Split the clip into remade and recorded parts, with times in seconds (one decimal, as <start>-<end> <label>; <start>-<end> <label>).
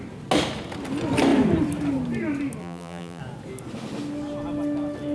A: 0.0-2.6 recorded; 2.6-3.2 remade; 3.2-5.1 recorded